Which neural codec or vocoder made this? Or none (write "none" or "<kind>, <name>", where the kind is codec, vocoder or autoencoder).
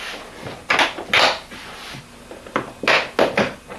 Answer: none